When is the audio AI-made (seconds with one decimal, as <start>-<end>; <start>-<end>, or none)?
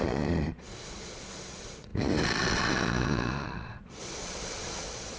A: 0.0-5.2